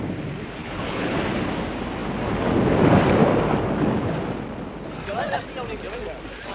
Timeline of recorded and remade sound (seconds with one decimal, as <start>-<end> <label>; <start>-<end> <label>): 0.0-0.6 recorded; 0.6-1.2 remade; 1.2-6.5 recorded